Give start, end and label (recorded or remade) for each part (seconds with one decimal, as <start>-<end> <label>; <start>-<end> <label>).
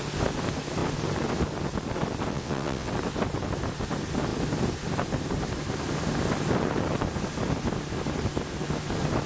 0.0-2.3 recorded; 2.3-2.9 remade; 2.9-9.3 recorded